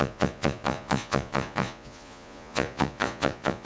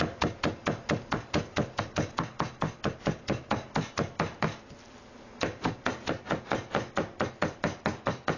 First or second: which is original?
second